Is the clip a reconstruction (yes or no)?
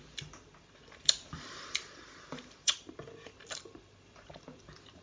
yes